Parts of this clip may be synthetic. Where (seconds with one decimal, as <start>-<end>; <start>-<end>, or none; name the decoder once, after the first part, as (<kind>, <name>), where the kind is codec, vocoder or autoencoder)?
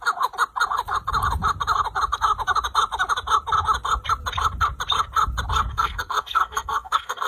5.7-7.3 (codec, SNAC)